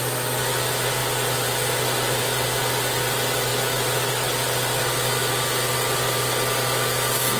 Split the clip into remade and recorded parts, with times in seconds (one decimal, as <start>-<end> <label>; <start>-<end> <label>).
0.0-7.4 recorded